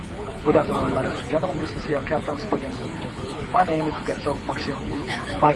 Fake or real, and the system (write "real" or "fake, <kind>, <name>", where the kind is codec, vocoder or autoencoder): fake, codec, HILCodec